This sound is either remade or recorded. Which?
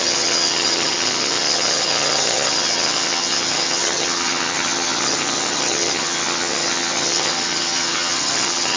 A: remade